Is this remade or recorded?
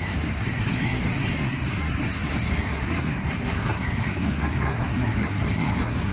remade